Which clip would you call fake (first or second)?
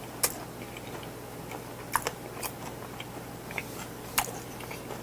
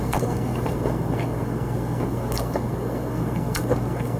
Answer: second